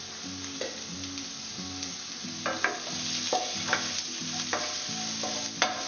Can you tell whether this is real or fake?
real